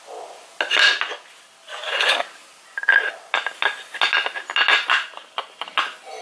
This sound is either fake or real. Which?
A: real